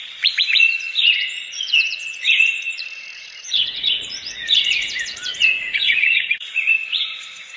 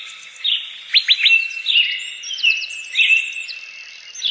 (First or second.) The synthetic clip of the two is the first